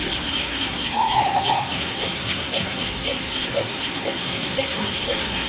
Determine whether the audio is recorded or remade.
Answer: remade